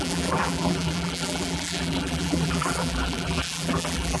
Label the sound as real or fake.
fake